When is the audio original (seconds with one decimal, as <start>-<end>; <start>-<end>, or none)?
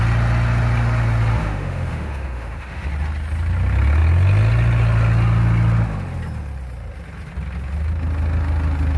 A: 0.0-1.4; 2.9-9.0